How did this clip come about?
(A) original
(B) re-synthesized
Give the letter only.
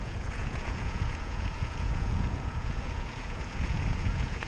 B